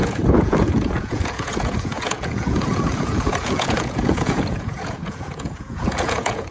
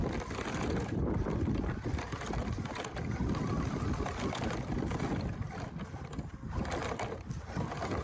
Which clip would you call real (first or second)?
second